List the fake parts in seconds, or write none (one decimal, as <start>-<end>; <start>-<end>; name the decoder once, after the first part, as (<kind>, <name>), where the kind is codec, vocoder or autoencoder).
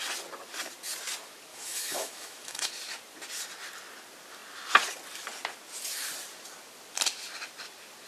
1.5-2.7 (autoencoder, DAC-VAE)